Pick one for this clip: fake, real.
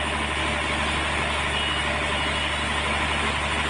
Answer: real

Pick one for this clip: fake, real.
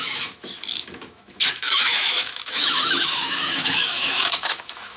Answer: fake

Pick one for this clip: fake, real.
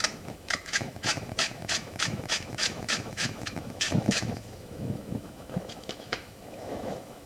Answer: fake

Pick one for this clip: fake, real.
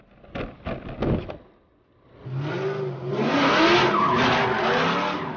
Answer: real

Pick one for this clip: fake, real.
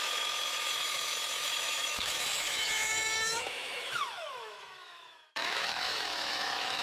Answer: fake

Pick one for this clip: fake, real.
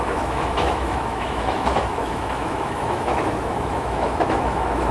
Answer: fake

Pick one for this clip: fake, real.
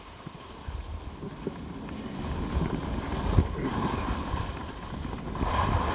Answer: real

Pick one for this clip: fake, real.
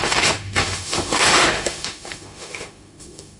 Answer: fake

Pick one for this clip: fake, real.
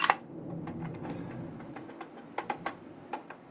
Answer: real